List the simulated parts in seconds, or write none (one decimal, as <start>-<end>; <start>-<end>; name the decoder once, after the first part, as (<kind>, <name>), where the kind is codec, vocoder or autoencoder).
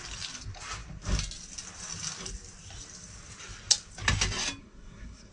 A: 4.6-5.3 (codec, SNAC)